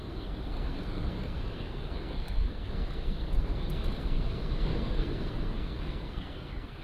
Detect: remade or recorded remade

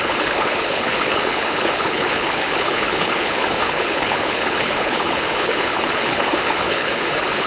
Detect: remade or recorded remade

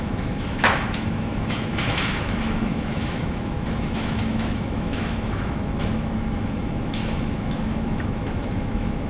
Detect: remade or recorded remade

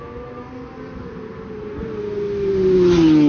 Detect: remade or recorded recorded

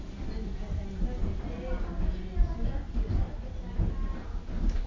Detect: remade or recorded recorded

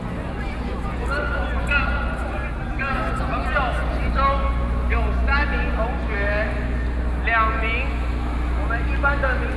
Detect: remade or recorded recorded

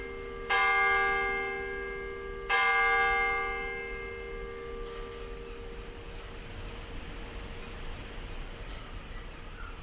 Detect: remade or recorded recorded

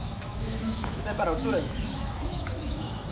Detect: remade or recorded remade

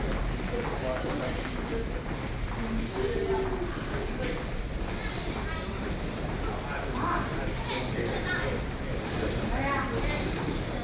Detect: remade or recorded recorded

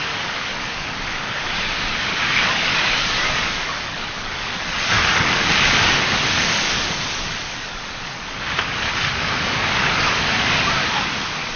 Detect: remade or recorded remade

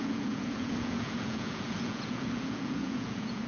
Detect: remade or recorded remade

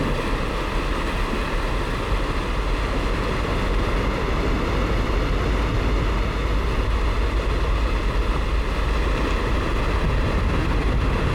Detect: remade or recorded recorded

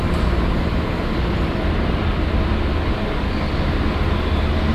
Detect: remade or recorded recorded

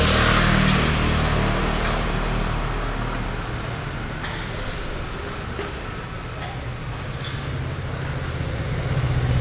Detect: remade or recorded recorded